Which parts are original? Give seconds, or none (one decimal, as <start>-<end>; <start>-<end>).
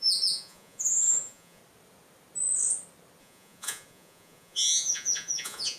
1.6-3.2